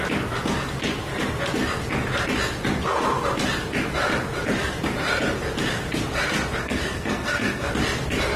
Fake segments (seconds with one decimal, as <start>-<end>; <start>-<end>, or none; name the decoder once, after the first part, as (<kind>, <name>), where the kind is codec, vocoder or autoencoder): 6.6-7.7 (codec, SNAC)